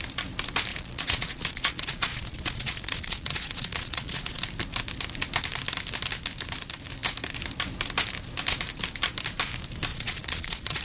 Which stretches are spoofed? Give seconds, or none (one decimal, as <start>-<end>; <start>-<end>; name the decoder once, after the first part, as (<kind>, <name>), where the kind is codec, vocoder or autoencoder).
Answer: 0.7-4.4 (vocoder, Vocos); 9.9-10.8